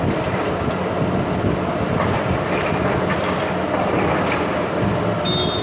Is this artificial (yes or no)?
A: no